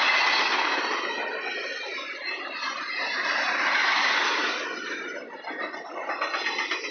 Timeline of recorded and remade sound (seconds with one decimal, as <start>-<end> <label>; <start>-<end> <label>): 0.0-6.9 recorded